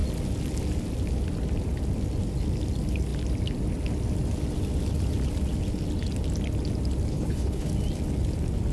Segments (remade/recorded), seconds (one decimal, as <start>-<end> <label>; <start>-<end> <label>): 0.0-7.1 recorded; 7.1-7.7 remade; 7.7-8.7 recorded